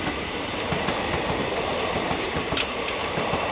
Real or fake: fake